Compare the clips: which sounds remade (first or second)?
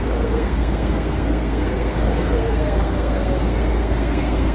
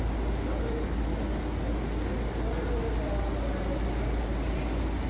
first